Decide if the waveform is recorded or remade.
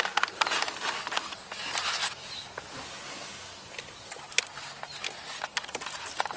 recorded